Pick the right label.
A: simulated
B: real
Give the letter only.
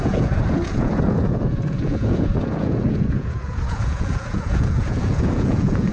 A